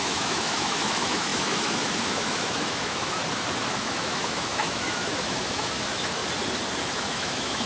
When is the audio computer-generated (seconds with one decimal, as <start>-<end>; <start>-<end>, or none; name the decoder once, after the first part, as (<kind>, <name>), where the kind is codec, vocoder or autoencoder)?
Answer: 0.0-3.2 (autoencoder, DAC-VAE); 3.7-6.2; 6.9-7.7